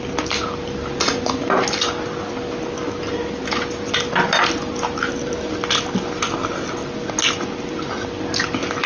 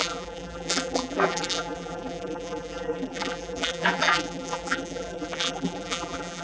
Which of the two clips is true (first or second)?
first